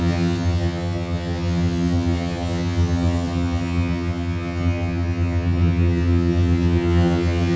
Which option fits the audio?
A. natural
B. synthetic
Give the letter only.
B